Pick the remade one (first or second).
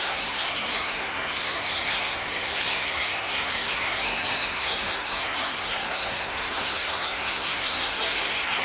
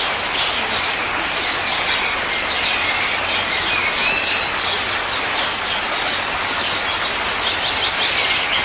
first